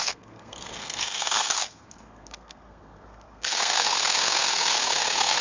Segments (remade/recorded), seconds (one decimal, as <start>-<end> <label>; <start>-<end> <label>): 0.0-5.4 remade